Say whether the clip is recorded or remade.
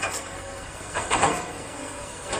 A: remade